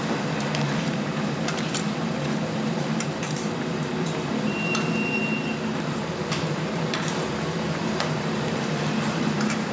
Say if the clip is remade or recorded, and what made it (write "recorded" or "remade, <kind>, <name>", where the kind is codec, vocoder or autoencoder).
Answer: remade, vocoder, BigVGAN v2